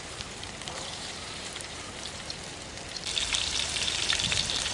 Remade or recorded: remade